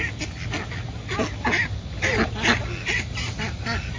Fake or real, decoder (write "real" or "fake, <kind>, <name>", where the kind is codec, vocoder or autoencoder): real